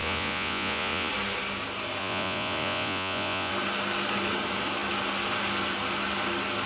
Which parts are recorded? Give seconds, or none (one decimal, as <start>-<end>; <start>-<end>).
1.1-2.0; 3.5-6.7